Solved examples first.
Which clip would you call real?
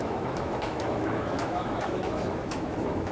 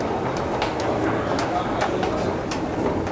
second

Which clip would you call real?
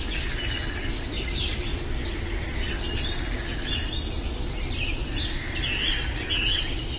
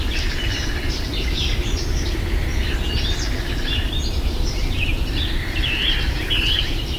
first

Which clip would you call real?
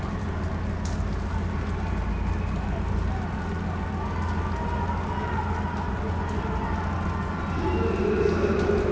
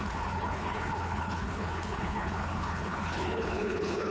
first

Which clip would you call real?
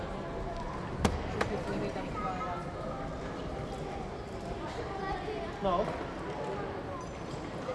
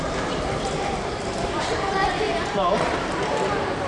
first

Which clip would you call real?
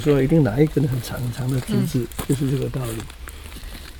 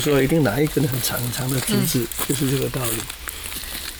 second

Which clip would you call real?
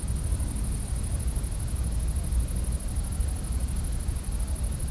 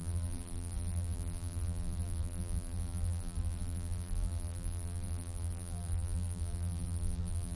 first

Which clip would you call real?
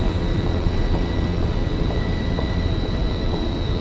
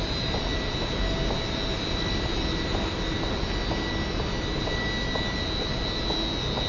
second